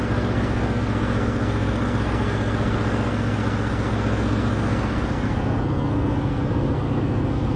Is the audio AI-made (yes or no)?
yes